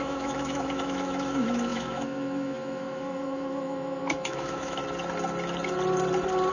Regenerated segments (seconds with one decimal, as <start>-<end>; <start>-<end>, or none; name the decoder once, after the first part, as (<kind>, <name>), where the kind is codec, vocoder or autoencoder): 0.0-4.8 (autoencoder, DAC-VAE)